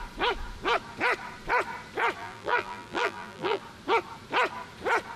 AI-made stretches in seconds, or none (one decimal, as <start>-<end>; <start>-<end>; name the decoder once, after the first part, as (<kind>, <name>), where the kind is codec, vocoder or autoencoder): 2.2-3.6 (vocoder, BigVGAN v2)